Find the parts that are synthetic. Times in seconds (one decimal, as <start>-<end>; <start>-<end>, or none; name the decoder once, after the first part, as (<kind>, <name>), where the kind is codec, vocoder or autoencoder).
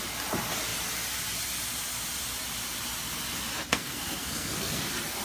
3.7-4.8 (codec, SNAC)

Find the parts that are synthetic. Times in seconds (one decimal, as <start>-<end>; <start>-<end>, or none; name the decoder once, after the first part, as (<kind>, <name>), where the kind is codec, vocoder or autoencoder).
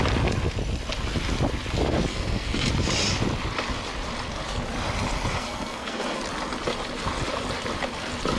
2.1-2.7 (codec, SNAC); 5.3-6.2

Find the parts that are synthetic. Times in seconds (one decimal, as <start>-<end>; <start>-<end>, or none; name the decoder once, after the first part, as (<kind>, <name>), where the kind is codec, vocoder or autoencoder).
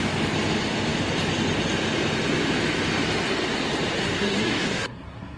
4.0-5.4 (codec, SNAC)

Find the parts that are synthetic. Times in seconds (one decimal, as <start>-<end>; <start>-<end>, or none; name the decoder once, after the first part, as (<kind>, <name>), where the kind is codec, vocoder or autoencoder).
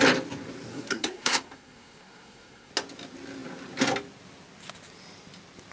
0.7-2.7 (codec, SNAC)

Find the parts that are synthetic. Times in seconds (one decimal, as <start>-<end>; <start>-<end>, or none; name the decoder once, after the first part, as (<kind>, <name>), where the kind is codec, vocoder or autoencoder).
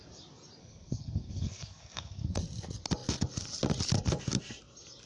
0.6-2.4 (codec, SNAC)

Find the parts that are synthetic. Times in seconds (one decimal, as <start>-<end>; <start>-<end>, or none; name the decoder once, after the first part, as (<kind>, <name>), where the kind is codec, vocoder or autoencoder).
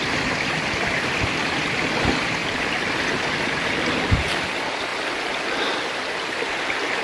none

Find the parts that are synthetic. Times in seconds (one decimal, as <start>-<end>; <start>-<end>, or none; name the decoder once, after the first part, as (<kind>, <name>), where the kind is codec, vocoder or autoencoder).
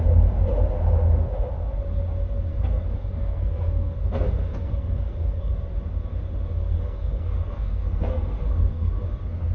2.5-5.5 (codec, SNAC); 6.6-8.9